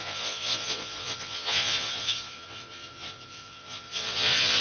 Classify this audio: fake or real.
fake